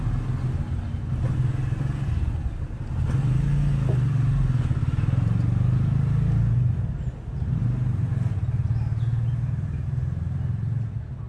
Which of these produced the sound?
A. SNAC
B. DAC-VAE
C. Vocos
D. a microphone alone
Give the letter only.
D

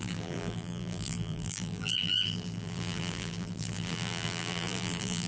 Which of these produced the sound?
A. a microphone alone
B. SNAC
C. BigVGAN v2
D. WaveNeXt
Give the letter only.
C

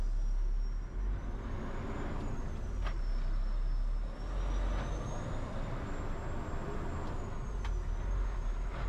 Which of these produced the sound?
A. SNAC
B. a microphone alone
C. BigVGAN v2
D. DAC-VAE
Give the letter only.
B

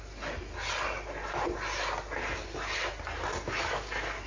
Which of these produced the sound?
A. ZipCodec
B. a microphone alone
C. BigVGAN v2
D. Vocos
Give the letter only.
B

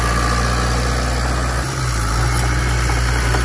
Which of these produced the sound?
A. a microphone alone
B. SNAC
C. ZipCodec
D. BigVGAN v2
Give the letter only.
A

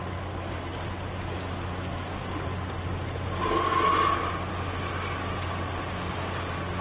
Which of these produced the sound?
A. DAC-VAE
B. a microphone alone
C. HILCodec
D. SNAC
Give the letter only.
B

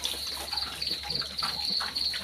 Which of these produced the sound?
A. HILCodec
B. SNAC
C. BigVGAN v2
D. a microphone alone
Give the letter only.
D